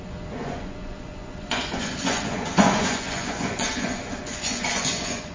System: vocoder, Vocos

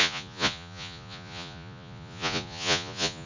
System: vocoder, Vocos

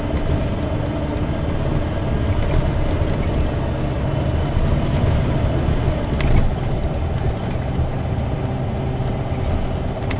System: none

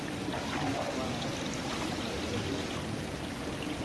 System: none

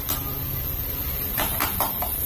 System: none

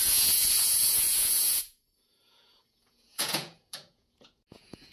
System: vocoder, Vocos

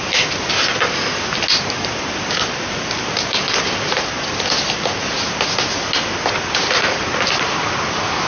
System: none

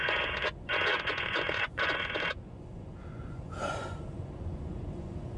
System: vocoder, Vocos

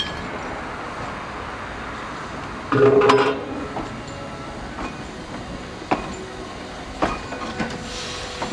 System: none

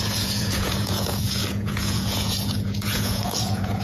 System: vocoder, Vocos